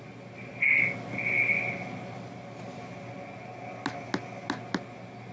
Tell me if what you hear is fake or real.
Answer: real